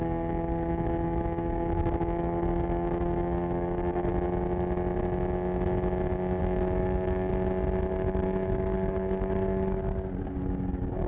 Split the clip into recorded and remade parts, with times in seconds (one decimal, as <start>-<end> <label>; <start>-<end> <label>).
0.0-4.1 remade; 4.1-6.4 recorded; 6.4-7.3 remade; 7.3-7.9 recorded; 7.9-11.1 remade